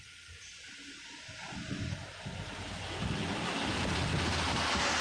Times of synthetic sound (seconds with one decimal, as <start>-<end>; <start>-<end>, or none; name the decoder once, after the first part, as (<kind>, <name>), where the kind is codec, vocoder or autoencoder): none